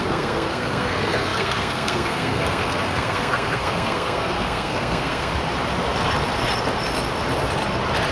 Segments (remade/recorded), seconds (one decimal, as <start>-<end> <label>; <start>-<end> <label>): 0.0-5.3 remade; 5.3-8.1 recorded